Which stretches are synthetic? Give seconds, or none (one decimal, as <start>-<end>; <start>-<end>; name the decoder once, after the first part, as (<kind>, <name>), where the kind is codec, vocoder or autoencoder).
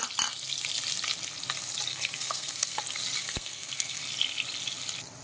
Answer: 1.9-2.8 (codec, SNAC); 3.2-4.0